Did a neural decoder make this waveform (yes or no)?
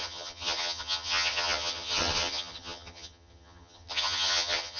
yes